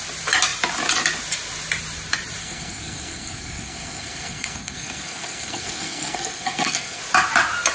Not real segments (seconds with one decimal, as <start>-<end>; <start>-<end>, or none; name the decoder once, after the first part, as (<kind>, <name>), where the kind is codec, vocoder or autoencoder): 2.4-7.0 (codec, SNAC)